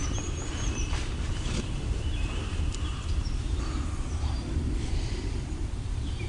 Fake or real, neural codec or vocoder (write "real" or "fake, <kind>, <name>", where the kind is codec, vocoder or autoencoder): fake, vocoder, BigVGAN v2